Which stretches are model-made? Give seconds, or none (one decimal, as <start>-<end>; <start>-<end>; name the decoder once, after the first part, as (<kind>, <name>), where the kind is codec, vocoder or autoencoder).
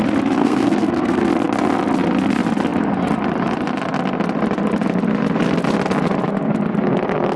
0.4-1.3 (codec, SNAC)